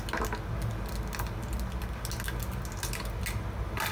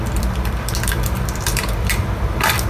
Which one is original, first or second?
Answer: first